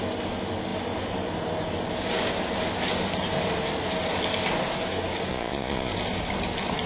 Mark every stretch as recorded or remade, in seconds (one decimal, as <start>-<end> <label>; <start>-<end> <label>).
0.0-5.3 recorded; 5.3-5.9 remade; 5.9-6.9 recorded